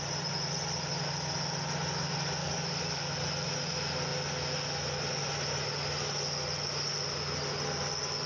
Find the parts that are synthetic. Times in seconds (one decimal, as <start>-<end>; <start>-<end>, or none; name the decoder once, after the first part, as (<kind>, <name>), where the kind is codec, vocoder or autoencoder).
2.4-3.1 (codec, DAC)